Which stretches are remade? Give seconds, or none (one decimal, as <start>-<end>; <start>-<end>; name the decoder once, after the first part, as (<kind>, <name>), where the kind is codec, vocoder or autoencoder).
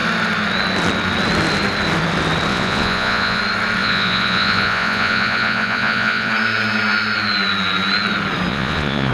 2.5-3.4 (vocoder, Vocos); 3.8-6.3; 8.5-9.1